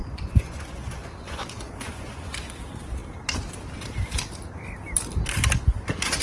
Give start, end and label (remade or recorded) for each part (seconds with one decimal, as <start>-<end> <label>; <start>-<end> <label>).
0.0-2.4 remade; 2.4-6.2 recorded